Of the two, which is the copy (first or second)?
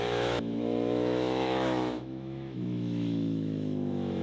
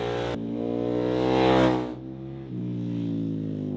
first